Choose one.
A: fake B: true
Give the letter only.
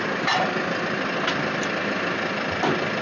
B